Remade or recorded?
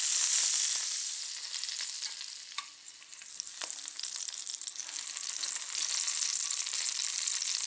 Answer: recorded